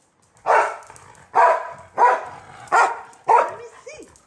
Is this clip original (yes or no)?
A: yes